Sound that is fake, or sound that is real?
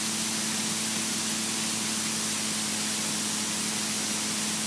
real